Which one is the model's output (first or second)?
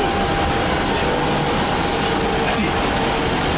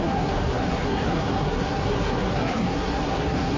second